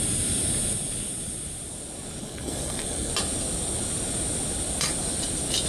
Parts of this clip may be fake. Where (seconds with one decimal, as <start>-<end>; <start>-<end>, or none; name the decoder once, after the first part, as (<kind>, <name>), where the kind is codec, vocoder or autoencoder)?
2.2-3.1 (codec, SNAC)